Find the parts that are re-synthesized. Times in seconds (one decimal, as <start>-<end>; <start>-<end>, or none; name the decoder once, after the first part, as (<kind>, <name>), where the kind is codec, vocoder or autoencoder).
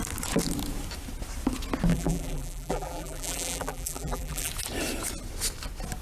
1.9-4.5 (vocoder, BigVGAN v2)